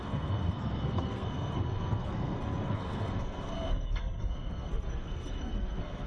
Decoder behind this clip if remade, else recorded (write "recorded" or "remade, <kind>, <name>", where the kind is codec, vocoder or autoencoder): remade, codec, SNAC